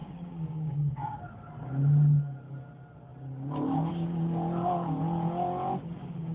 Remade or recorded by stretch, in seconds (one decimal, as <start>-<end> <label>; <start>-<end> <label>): 0.0-1.3 remade; 1.3-6.3 recorded